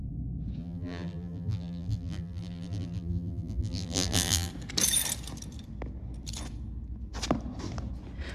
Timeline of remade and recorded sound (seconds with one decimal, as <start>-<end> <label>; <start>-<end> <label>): 0.0-0.6 recorded; 0.6-4.5 remade; 4.5-8.3 recorded